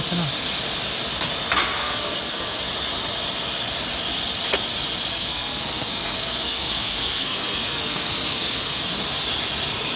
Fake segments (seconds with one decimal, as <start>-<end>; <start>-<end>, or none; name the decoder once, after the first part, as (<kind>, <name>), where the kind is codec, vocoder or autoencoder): 1.8-2.6 (codec, SNAC); 5.1-8.8